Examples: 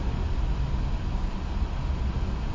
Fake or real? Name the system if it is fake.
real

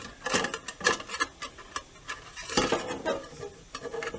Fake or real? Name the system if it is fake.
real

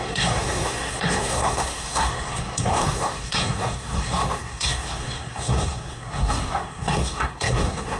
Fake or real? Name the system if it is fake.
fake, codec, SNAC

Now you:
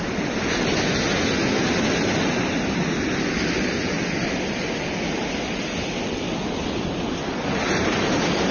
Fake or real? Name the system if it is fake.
real